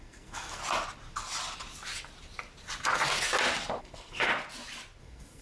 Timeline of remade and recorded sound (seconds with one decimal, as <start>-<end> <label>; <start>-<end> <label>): 0.0-0.6 remade; 0.6-3.8 recorded; 3.8-4.3 remade; 4.3-5.0 recorded; 5.0-5.4 remade